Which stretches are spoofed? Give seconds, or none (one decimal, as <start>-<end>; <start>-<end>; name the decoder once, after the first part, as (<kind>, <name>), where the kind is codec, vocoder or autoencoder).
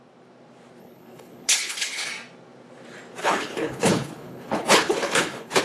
0.8-2.1 (codec, HILCodec); 3.2-5.6